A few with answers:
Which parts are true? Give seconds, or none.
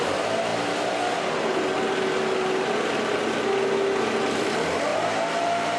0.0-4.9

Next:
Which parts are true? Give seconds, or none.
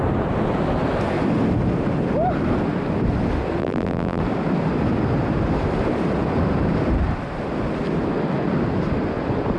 0.0-3.6; 4.2-9.6